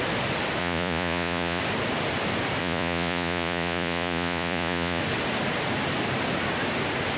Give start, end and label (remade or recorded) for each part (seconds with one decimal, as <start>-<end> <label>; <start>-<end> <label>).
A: 0.0-0.6 recorded; 0.6-1.6 remade; 1.6-2.6 recorded; 2.6-5.0 remade; 5.0-7.2 recorded